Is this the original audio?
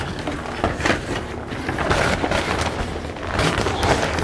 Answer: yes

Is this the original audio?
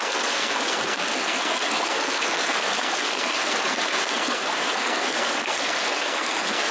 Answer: no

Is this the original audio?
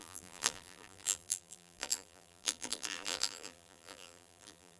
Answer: no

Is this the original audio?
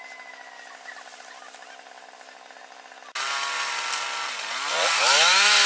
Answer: yes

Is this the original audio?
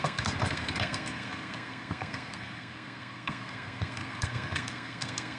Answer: no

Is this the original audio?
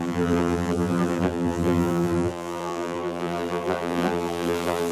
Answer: no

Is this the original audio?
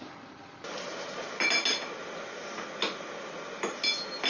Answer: yes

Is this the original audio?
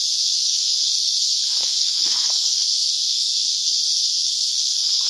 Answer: no